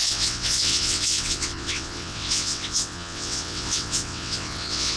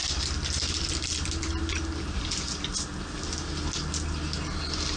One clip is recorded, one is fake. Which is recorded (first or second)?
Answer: second